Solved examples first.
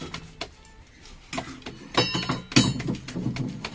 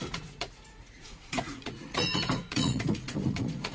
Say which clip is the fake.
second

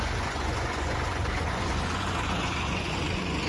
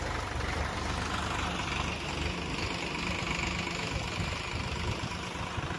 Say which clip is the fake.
first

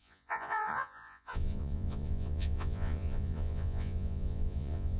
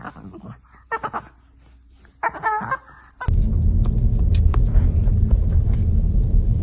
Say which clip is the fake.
first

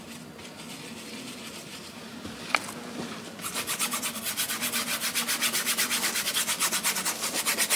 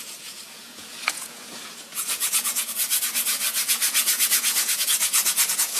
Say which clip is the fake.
second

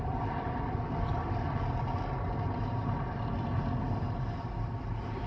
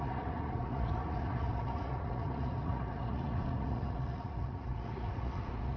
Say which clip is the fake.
second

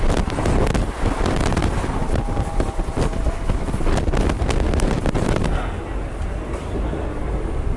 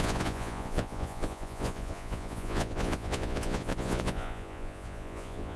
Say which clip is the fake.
second